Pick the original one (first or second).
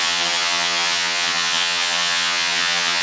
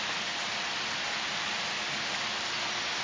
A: second